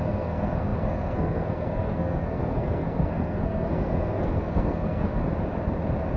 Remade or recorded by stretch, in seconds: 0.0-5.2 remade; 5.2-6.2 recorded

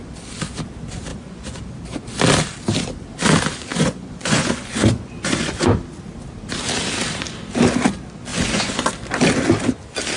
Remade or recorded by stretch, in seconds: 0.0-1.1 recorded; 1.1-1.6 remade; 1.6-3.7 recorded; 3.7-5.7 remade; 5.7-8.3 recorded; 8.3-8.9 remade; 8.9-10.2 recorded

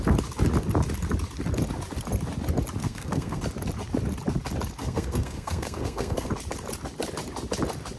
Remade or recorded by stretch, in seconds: 0.0-2.8 recorded; 2.8-3.4 remade; 3.4-4.8 recorded; 4.8-6.3 remade; 6.3-8.0 recorded

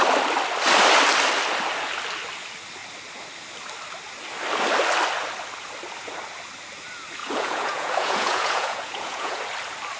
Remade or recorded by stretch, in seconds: 0.0-7.2 recorded; 7.2-9.4 remade; 9.4-10.0 recorded